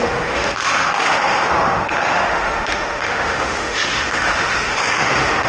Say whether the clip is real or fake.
fake